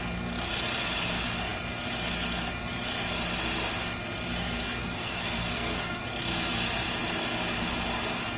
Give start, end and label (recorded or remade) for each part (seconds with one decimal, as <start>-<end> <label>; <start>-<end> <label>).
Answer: 0.0-4.8 recorded; 4.8-6.0 remade; 6.0-8.4 recorded